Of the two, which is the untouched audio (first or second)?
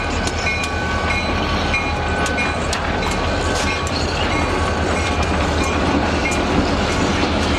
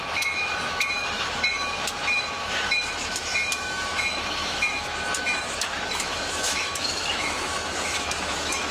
first